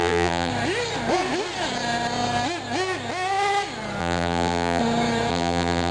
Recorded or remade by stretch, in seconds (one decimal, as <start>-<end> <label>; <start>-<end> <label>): 0.0-0.5 remade; 0.5-4.0 recorded; 4.0-4.8 remade; 4.8-5.3 recorded; 5.3-5.9 remade